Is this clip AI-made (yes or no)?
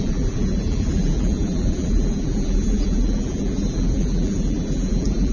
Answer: yes